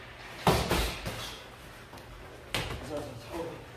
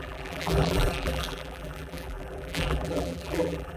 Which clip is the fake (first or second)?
second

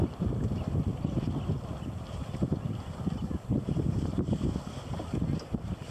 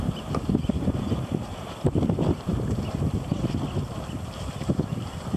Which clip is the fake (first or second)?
second